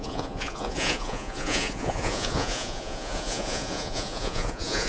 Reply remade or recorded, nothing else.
remade